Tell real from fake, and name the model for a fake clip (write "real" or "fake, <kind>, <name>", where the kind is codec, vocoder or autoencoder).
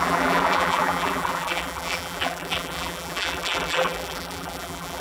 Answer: fake, vocoder, BigVGAN v2